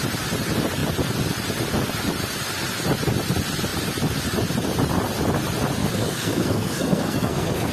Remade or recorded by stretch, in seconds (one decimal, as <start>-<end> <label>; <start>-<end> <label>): 0.0-5.8 recorded; 5.8-7.7 remade